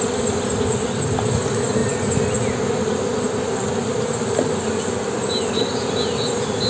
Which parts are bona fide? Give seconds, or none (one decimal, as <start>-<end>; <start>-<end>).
0.0-6.7